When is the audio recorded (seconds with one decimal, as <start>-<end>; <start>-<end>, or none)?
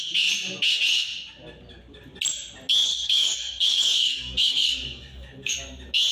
0.0-2.9; 5.5-6.1